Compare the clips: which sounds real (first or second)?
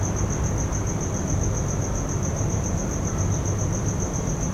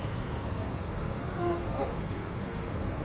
first